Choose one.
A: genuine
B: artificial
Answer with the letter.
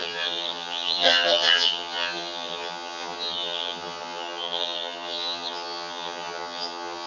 B